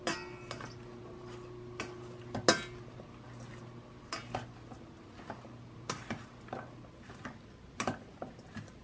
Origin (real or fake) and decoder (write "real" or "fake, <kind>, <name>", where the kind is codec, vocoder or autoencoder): real